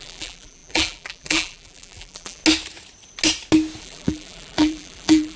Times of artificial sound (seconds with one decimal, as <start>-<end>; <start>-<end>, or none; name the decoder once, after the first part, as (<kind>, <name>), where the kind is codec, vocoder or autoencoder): 0.0-2.4 (vocoder, BigVGAN v2); 3.8-5.4